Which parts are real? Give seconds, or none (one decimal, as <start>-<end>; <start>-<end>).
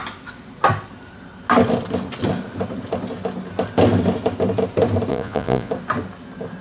0.0-5.1; 5.7-6.6